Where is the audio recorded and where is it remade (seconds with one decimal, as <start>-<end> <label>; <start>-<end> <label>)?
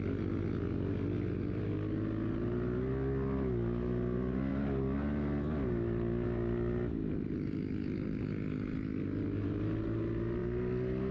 0.0-11.1 recorded